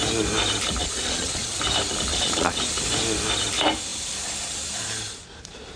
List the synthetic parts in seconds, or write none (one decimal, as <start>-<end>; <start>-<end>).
0.8-1.6; 2.1-2.6